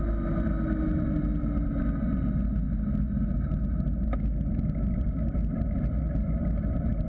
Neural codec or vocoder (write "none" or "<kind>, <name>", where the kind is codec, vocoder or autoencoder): none